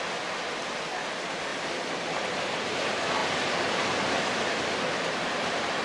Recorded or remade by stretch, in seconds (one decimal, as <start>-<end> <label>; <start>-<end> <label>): 0.0-5.8 recorded